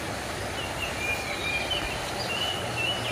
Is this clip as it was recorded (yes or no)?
yes